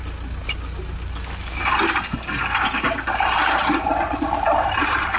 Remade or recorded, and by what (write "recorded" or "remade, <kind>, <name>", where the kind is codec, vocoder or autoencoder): recorded